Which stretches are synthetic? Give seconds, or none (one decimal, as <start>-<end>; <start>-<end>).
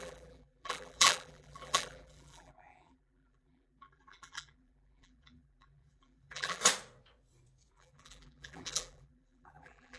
0.0-6.6; 7.7-10.0